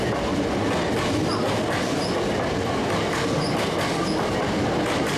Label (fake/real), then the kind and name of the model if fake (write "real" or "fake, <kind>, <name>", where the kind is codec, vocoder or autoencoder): real